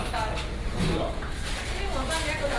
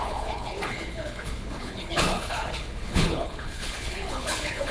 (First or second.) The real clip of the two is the first